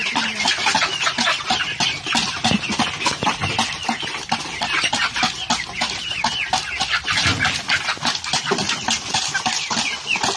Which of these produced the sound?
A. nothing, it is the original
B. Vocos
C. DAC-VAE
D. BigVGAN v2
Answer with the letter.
A